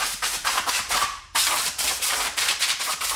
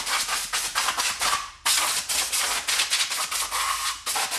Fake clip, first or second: first